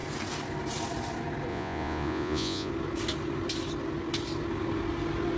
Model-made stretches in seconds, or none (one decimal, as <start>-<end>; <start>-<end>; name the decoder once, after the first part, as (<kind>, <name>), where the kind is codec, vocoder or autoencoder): 1.5-2.7 (vocoder, Vocos)